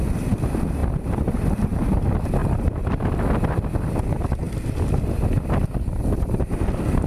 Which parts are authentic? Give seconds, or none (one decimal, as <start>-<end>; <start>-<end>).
0.0-0.8; 1.3-2.4; 3.1-7.1